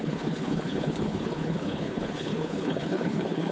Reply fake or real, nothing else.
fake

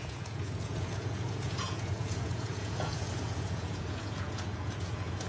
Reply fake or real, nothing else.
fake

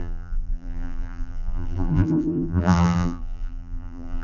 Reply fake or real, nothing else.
fake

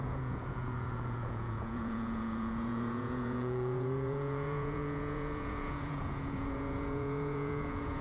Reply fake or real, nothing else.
fake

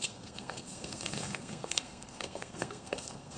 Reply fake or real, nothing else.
fake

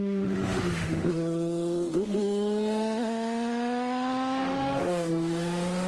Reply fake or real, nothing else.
fake